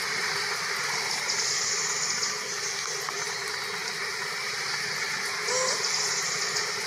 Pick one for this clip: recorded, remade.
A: recorded